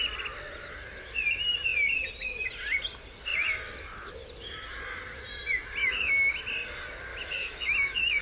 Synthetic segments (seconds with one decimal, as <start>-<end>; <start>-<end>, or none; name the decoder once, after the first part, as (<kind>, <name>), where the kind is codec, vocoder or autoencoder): 5.8-6.4 (autoencoder, DAC-VAE); 7.1-8.2